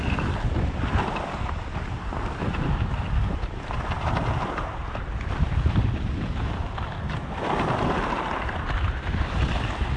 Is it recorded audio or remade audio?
recorded